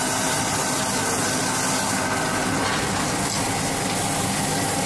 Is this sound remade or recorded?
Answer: recorded